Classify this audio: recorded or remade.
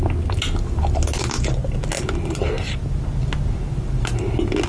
recorded